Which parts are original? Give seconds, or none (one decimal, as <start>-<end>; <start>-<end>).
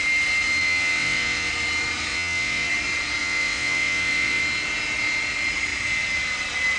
0.0-0.6; 1.5-2.1; 2.7-3.2; 4.4-6.8